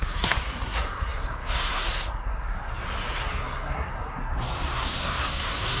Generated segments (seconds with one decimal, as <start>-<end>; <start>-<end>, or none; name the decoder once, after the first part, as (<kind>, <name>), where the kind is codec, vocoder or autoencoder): 0.0-2.7 (codec, SNAC); 3.2-5.8